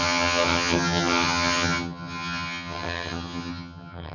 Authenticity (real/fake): fake